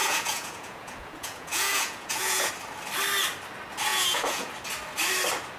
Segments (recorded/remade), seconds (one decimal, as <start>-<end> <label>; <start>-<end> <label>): 0.0-2.5 remade; 2.5-3.9 recorded; 3.9-4.5 remade; 4.5-5.6 recorded